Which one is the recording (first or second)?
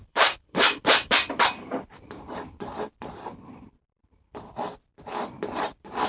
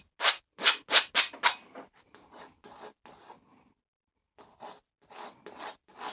second